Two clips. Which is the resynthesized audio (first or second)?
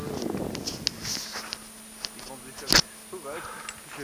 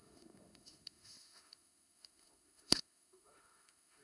second